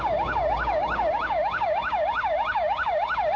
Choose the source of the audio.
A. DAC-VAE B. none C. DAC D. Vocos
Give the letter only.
C